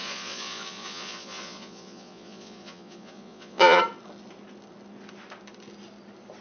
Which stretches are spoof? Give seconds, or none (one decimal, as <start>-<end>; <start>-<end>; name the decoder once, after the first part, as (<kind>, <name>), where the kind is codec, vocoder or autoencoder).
0.0-3.8 (vocoder, Vocos)